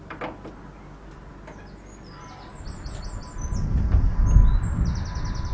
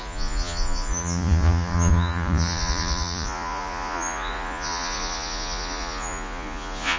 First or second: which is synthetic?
second